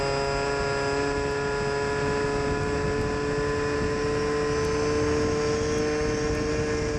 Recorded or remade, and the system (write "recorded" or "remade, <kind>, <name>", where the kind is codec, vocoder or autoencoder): recorded